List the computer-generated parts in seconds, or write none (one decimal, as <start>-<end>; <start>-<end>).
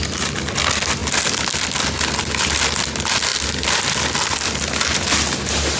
none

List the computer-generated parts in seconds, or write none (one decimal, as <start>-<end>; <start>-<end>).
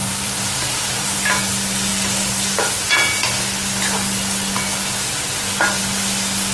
0.0-0.8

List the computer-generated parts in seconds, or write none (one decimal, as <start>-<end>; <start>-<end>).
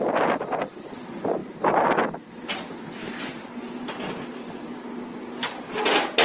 none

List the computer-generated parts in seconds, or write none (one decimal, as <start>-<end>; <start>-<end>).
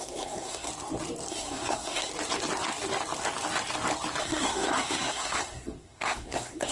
0.0-0.7; 1.3-2.1; 4.2-6.7